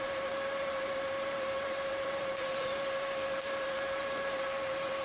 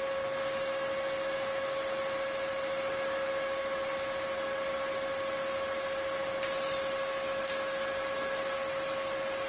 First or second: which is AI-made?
first